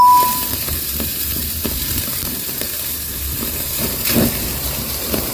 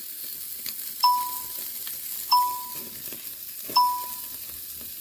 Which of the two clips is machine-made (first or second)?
first